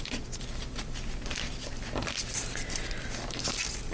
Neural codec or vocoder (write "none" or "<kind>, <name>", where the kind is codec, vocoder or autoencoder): vocoder, BigVGAN v2